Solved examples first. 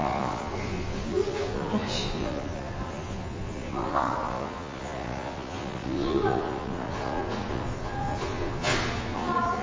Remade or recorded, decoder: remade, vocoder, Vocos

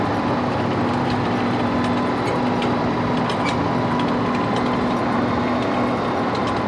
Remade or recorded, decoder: recorded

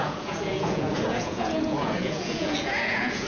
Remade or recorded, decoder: remade, vocoder, Vocos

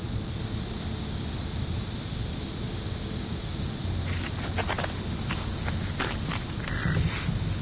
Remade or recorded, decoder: recorded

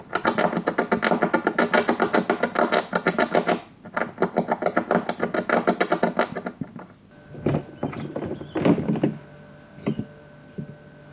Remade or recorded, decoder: recorded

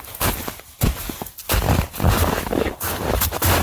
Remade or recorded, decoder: recorded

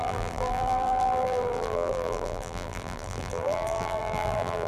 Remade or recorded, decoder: remade, vocoder, BigVGAN v2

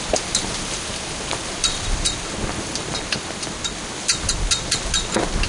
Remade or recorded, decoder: remade, vocoder, BigVGAN v2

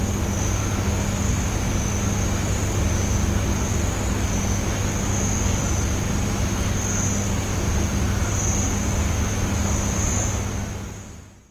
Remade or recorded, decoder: recorded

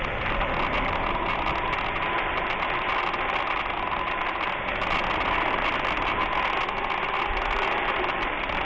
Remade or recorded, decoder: recorded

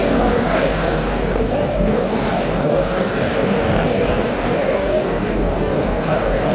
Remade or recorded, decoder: remade, codec, DAC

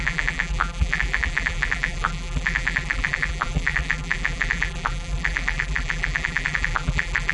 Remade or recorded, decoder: remade, vocoder, BigVGAN v2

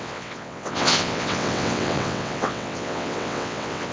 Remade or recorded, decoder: remade, vocoder, WaveNeXt